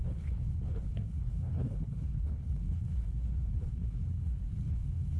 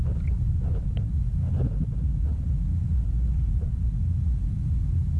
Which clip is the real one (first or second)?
second